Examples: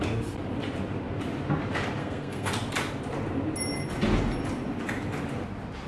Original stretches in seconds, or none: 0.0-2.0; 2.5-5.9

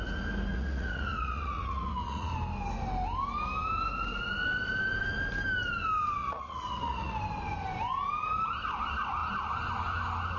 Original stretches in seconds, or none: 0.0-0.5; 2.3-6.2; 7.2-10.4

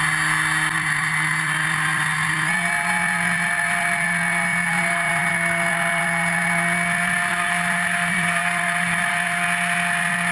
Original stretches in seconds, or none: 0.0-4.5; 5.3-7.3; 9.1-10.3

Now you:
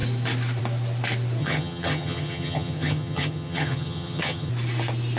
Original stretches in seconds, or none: 0.0-1.4; 4.5-5.2

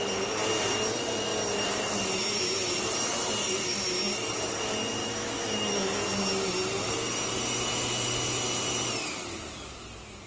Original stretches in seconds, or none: 0.0-5.0; 6.0-10.3